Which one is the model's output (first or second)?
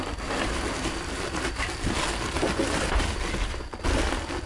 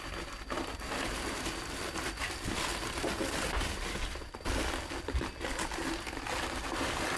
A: first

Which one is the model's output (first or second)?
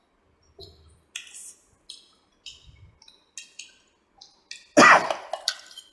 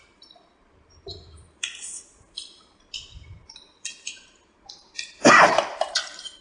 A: second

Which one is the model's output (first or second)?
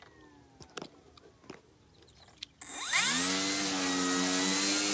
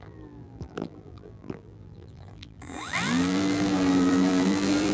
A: second